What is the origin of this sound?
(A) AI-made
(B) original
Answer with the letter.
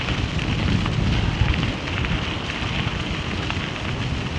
B